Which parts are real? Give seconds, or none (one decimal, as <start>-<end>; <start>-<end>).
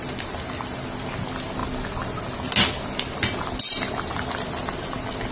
0.0-5.3